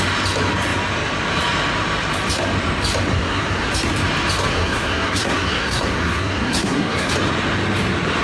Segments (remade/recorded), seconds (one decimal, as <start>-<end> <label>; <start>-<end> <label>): 0.0-3.1 recorded; 3.1-3.7 remade; 3.7-4.5 recorded; 4.5-7.1 remade; 7.1-8.2 recorded